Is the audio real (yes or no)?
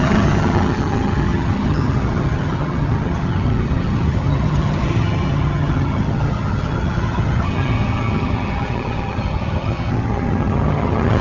no